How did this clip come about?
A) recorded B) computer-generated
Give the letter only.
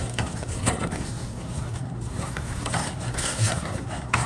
B